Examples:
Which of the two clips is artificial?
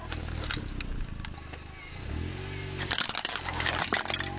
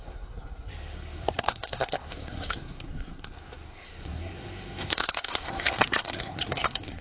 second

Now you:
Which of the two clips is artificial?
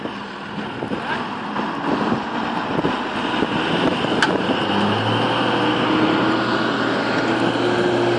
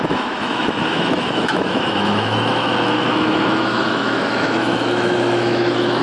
second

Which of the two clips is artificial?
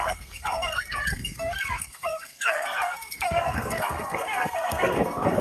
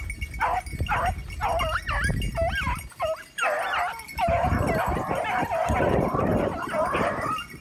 first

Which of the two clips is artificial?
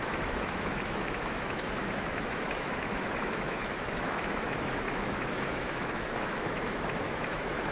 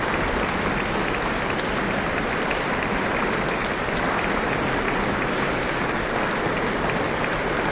first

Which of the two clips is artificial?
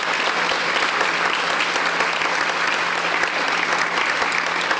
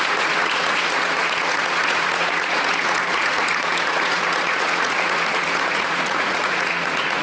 second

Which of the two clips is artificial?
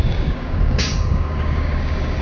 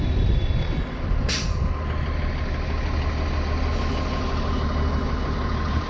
first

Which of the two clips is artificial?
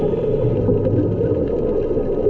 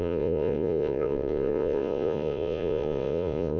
second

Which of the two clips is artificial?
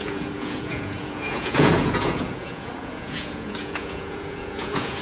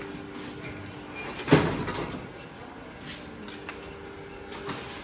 first